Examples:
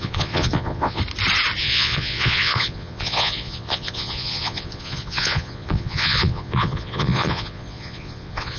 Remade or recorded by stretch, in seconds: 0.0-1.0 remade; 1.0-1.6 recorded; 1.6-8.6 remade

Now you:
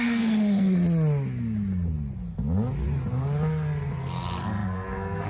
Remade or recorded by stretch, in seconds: 0.0-0.8 remade; 0.8-4.0 recorded; 4.0-5.3 remade

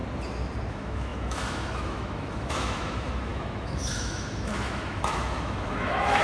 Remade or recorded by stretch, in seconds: 0.0-0.7 recorded; 0.7-6.2 remade

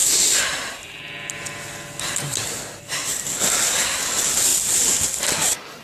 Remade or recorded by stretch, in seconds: 0.0-5.8 recorded

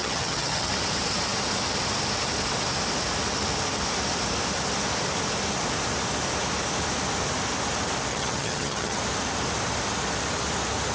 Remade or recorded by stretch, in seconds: 0.0-0.7 remade; 0.7-8.1 recorded; 8.1-9.0 remade; 9.0-10.9 recorded

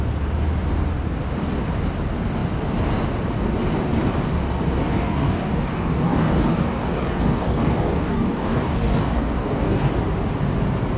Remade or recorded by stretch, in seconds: 0.0-4.8 recorded; 4.8-9.9 remade; 9.9-11.0 recorded

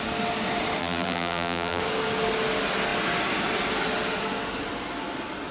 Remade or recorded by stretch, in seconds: 0.0-0.8 recorded; 0.8-1.8 remade; 1.8-5.5 recorded

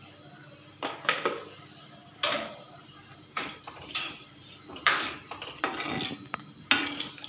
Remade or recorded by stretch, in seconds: 0.0-2.0 recorded; 2.0-5.6 remade; 5.6-7.3 recorded